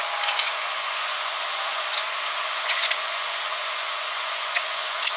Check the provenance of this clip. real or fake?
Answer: fake